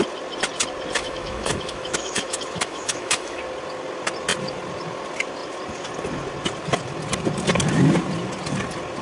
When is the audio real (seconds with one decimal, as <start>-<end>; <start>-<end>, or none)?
0.0-1.0; 3.4-9.0